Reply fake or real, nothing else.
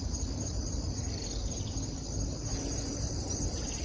real